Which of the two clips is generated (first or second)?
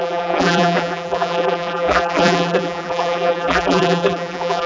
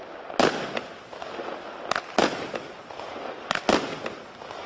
first